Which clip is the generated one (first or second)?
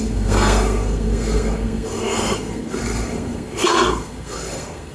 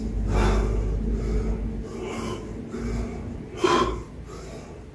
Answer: first